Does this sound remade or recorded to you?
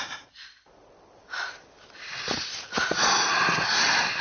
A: recorded